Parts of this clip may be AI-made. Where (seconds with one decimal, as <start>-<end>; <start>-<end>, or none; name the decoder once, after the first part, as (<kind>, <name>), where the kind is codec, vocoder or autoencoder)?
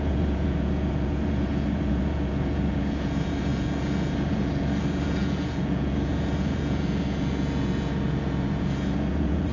0.0-9.5 (vocoder, Vocos)